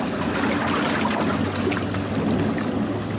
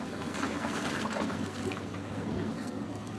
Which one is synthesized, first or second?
second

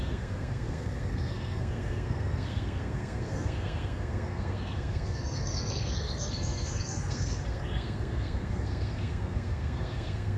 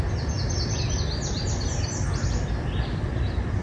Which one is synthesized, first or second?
first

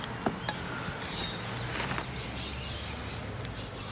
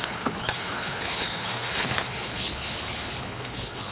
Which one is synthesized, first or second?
second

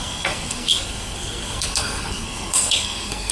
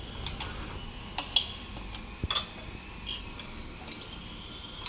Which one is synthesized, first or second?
first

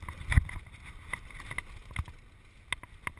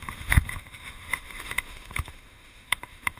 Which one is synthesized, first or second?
second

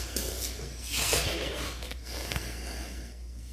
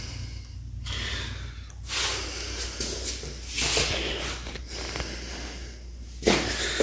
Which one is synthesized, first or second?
first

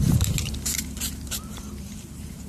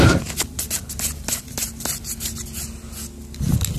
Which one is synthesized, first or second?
first